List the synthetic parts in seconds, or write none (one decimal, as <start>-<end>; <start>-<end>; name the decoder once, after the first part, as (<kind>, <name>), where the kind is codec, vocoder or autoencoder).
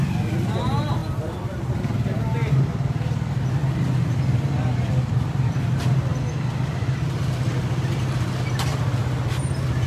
none